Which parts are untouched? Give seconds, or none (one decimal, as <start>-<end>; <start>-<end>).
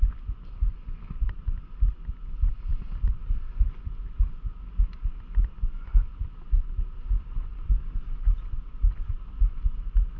0.0-10.2